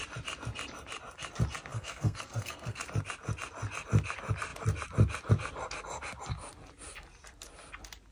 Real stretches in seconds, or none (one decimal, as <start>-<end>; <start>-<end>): 0.0-1.7; 2.8-8.1